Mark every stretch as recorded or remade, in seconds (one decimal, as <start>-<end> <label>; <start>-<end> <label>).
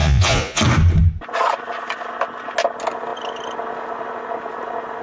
0.0-0.6 remade; 0.6-5.0 recorded